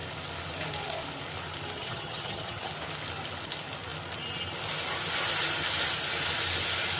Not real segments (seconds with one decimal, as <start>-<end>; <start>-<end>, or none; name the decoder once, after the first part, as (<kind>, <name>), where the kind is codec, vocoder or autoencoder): 1.8-2.7 (vocoder, HiFi-GAN)